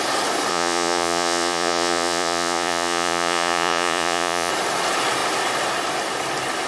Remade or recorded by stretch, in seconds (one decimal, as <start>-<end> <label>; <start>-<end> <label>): 0.0-0.5 recorded; 0.5-4.5 remade; 4.5-6.7 recorded